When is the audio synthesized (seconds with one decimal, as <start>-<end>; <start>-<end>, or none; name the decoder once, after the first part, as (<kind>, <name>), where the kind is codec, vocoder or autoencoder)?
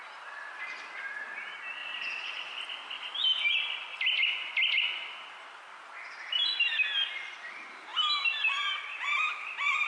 none